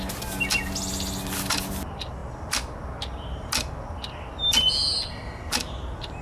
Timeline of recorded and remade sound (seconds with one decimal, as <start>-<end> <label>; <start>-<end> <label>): 0.0-6.2 recorded